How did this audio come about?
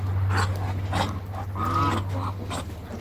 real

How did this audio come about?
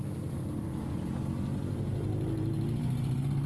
real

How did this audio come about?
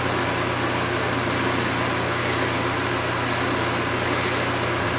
real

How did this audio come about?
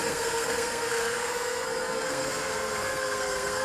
fake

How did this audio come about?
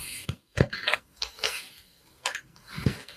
fake